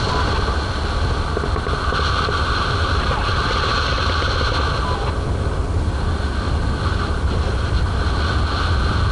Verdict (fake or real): real